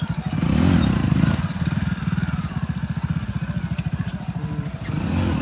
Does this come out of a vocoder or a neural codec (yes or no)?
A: yes